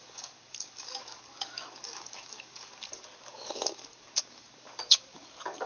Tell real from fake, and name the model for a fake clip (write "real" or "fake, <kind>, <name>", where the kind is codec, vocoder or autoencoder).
fake, codec, DAC